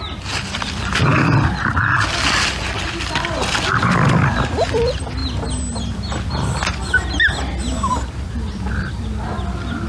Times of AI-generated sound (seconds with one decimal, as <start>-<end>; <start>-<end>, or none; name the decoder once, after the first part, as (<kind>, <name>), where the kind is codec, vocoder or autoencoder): none